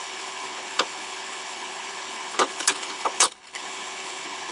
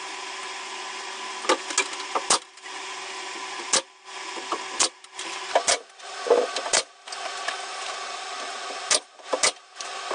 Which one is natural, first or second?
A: second